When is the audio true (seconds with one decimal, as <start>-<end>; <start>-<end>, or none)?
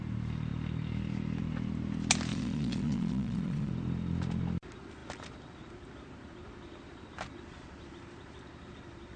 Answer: 0.0-2.3; 3.7-9.2